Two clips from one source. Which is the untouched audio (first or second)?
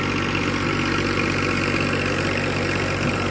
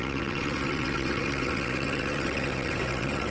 first